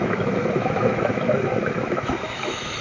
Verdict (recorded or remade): remade